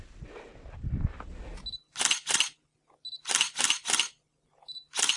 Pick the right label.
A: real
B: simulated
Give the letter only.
A